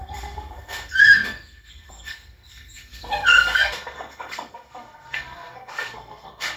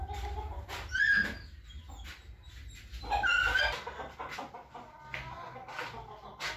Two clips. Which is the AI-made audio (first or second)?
first